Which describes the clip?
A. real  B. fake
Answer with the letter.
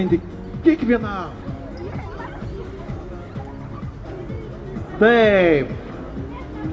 A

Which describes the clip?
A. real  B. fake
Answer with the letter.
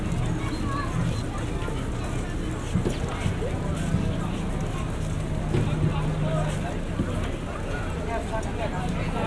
A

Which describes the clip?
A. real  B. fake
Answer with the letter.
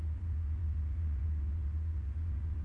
B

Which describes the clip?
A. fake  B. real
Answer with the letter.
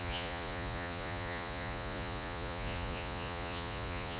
A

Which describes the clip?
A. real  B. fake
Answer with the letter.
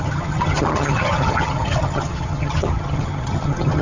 B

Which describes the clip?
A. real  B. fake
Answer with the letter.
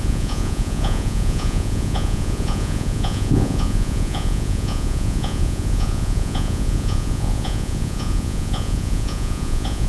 B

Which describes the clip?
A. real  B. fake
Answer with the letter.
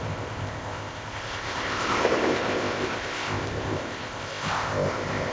B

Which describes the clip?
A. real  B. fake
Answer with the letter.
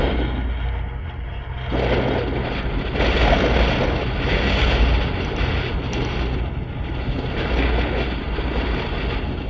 A